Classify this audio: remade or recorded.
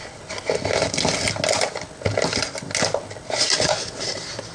recorded